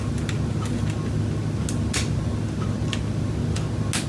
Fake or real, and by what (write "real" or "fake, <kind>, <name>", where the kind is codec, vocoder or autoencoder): real